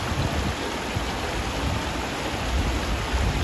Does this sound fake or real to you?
real